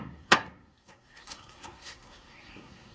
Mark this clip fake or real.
fake